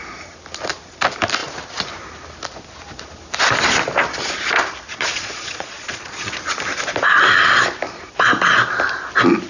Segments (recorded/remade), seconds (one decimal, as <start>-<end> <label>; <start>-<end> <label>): 0.0-4.9 recorded; 4.9-6.3 remade; 6.3-9.5 recorded